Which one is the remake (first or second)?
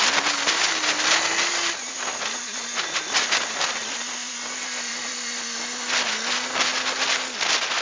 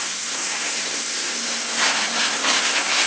second